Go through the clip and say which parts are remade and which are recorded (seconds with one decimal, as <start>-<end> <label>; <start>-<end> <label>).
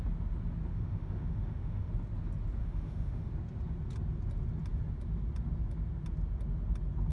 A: 0.0-0.7 recorded; 0.7-1.9 remade; 1.9-2.6 recorded; 2.6-3.3 remade; 3.3-7.1 recorded